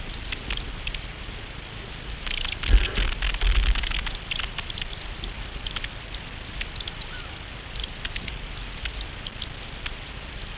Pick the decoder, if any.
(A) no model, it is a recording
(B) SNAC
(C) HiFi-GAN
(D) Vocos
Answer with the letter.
A